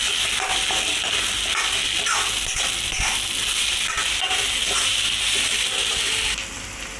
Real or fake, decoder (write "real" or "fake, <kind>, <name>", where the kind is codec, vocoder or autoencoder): real